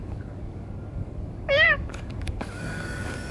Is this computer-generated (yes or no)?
yes